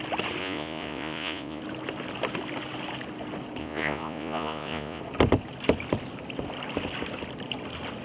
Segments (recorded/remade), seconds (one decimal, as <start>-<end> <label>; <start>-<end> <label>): 0.0-0.4 recorded; 0.4-1.6 remade; 1.6-3.6 recorded; 3.6-5.0 remade; 5.0-8.0 recorded